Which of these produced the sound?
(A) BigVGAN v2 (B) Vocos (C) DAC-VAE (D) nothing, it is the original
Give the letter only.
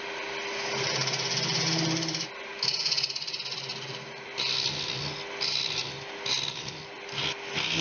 D